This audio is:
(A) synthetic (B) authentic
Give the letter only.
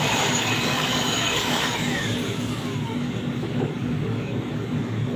A